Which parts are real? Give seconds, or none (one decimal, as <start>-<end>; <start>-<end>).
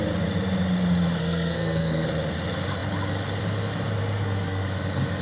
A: 0.0-1.2; 2.1-4.0; 4.7-5.2